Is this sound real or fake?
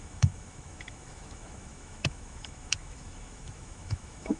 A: fake